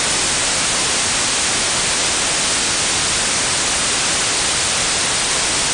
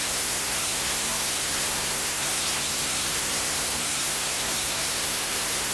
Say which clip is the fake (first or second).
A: second